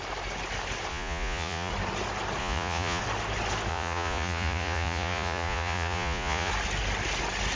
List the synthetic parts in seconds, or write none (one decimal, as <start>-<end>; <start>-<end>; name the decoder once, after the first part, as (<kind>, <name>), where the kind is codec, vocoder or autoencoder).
0.9-1.7 (vocoder, Vocos); 2.4-3.0; 3.7-6.5